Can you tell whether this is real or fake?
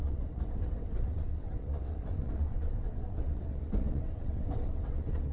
fake